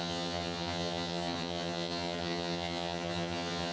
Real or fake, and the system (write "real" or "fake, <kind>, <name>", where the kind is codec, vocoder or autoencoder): fake, vocoder, HiFi-GAN